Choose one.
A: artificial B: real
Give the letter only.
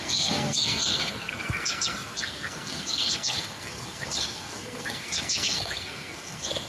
A